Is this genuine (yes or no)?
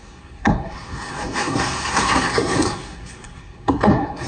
no